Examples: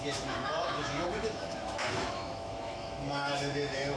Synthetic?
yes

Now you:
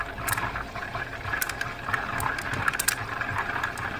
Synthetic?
no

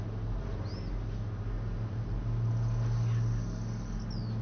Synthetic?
no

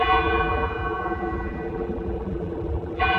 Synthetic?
yes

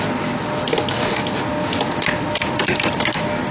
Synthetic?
no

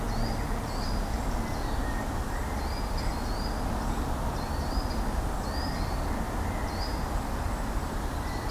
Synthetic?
no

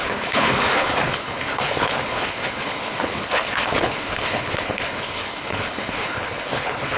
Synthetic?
yes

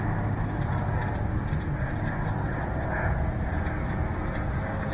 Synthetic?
no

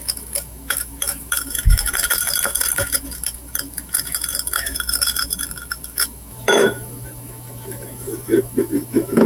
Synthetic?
yes